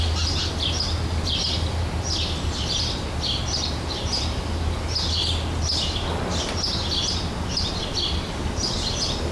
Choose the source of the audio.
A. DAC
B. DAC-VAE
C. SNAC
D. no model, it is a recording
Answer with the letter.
D